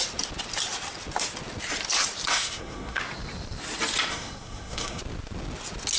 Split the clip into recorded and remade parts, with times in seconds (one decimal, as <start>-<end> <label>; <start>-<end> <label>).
0.0-2.3 recorded; 2.3-3.0 remade; 3.0-4.1 recorded; 4.1-5.0 remade; 5.0-6.0 recorded